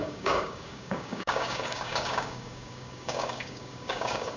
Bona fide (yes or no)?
no